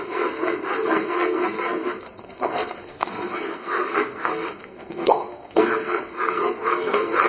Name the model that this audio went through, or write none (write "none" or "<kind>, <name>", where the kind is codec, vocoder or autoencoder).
codec, SNAC